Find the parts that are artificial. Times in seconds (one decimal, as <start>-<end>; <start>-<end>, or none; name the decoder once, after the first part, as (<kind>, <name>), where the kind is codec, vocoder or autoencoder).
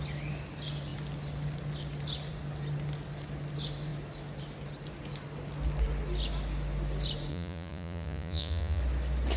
7.3-8.8 (vocoder, Vocos)